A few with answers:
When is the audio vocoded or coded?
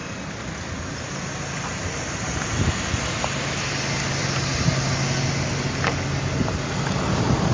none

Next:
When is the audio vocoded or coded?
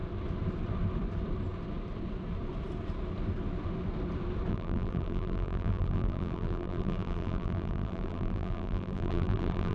4.5-9.7 (vocoder, BigVGAN v2)